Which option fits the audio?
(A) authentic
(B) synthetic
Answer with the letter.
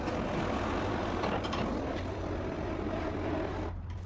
B